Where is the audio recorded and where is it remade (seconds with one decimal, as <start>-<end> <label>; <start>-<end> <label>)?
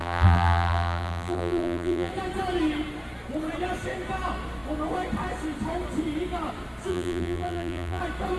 0.0-2.1 remade; 2.1-6.9 recorded; 6.9-8.0 remade; 8.0-8.4 recorded